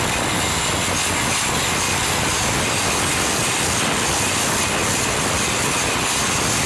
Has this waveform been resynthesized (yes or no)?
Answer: no